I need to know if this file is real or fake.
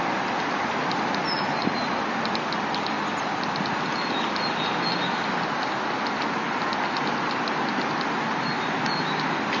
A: real